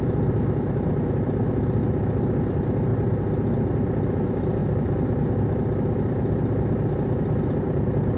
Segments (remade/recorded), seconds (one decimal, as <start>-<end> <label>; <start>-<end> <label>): 0.0-8.2 recorded